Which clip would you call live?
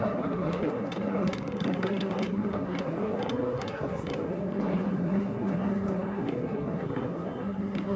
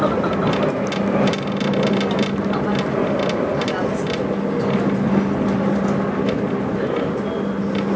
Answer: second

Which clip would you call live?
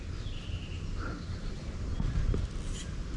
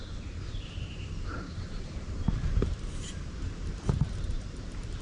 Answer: first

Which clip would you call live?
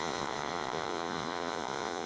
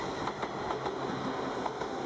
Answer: second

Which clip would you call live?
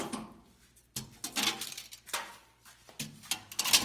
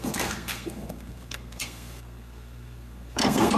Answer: first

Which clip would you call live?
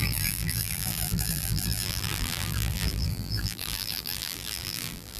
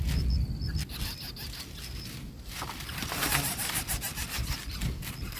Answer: second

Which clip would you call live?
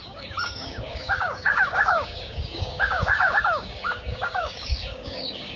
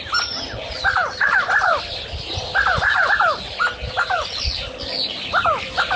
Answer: second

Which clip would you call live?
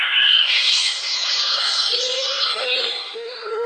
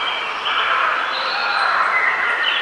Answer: second